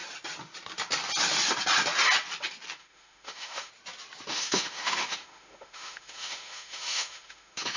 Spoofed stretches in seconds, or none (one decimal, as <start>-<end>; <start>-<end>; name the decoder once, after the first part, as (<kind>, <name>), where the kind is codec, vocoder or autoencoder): 2.8-3.7 (autoencoder, DAC-VAE); 4.3-7.8